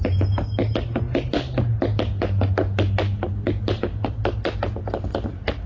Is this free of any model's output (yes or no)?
yes